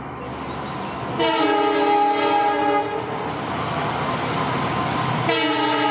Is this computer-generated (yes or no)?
no